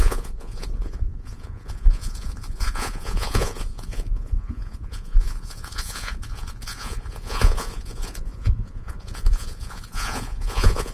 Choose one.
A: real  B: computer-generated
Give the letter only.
B